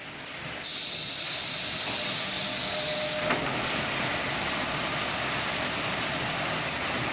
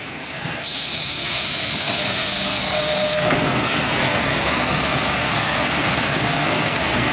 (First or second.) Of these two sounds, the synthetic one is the second